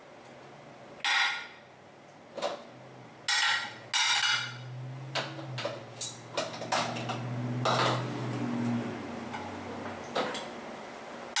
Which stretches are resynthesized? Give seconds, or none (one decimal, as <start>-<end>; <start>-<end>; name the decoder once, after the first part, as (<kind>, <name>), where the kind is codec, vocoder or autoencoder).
none